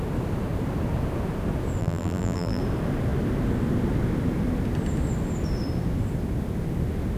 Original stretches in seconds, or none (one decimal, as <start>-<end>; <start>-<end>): 0.0-1.8; 2.6-7.2